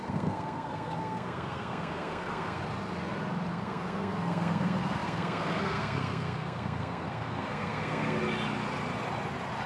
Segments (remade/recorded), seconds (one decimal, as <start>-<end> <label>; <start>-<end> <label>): 0.0-2.6 remade; 2.6-3.5 recorded; 3.5-8.2 remade; 8.2-9.7 recorded